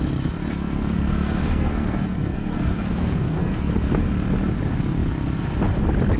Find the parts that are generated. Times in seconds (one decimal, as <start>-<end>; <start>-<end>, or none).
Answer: 0.4-4.1